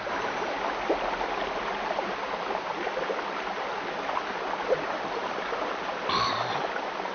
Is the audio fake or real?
real